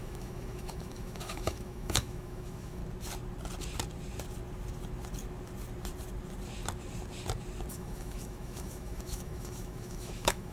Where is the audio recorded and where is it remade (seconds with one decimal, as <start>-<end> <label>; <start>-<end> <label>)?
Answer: 0.0-2.8 remade; 2.8-7.7 recorded; 7.7-10.5 remade